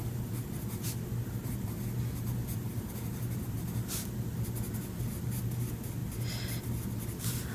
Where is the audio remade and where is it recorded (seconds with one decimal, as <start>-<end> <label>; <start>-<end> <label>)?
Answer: 0.0-7.5 recorded